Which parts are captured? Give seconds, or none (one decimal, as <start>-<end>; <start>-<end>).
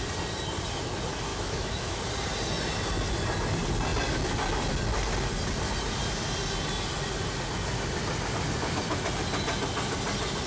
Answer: 0.0-1.3; 2.0-10.5